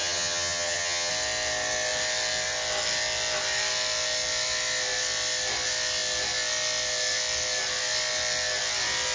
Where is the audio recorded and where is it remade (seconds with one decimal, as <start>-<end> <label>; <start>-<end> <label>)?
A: 0.0-1.1 remade; 1.1-9.1 recorded